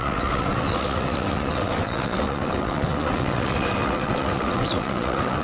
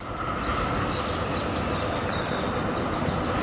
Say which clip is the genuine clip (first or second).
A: second